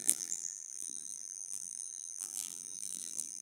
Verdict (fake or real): fake